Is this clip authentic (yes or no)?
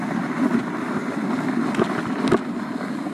yes